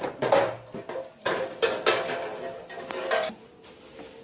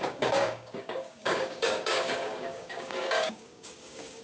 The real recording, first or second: first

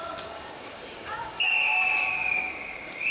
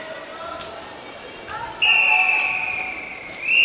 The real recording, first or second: second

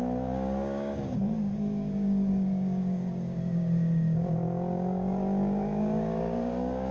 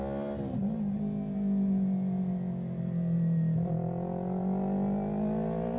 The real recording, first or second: second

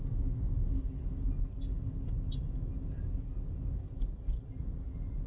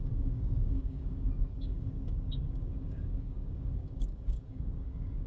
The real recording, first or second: first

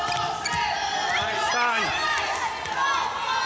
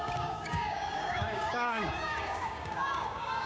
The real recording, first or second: first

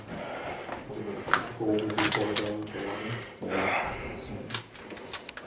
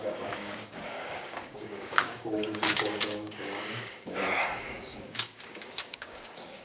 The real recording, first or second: first